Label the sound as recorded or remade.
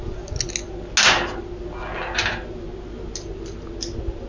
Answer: recorded